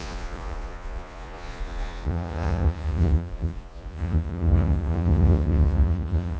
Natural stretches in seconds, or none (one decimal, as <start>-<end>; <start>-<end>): none